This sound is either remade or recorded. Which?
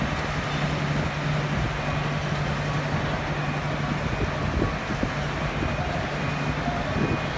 recorded